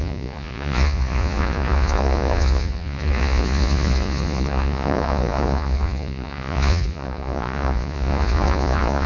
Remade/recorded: remade